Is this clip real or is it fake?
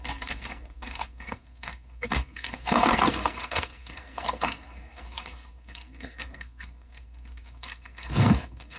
fake